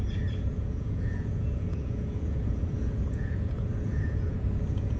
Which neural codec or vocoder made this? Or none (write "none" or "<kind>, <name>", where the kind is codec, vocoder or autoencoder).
vocoder, Vocos